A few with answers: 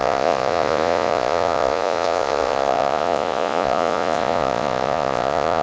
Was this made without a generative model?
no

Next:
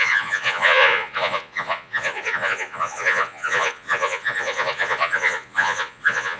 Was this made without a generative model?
no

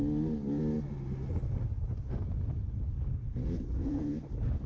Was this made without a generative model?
yes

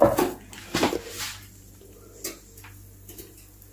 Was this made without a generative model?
yes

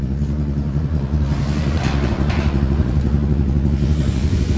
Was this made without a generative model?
no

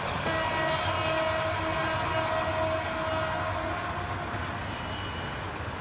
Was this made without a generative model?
yes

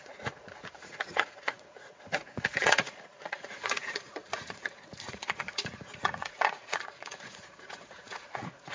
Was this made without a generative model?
no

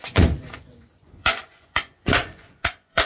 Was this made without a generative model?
no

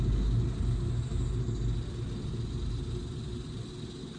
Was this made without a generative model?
yes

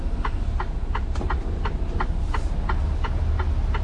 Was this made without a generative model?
yes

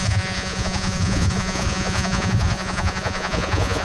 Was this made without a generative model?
no